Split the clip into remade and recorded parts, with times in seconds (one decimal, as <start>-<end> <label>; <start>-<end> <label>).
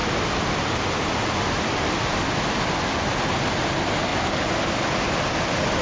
0.0-5.8 recorded